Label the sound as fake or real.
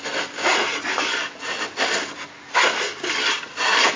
real